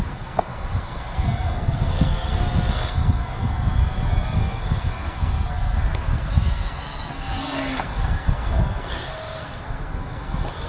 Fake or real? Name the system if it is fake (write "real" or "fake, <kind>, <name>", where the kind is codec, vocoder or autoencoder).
fake, codec, SNAC